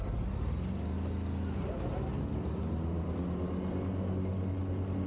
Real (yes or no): yes